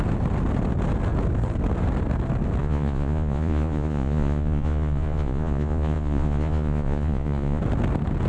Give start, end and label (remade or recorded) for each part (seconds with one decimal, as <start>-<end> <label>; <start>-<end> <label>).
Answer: 0.0-2.6 recorded; 2.6-7.6 remade; 7.6-8.3 recorded

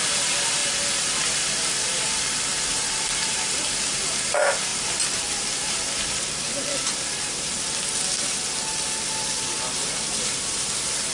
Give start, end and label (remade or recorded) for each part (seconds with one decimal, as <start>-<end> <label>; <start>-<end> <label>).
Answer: 0.0-0.6 remade; 0.6-1.2 recorded; 1.2-4.7 remade; 4.7-6.1 recorded; 6.1-11.1 remade

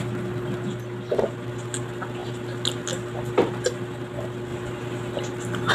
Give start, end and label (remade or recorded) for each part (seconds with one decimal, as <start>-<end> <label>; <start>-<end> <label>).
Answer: 0.0-5.7 recorded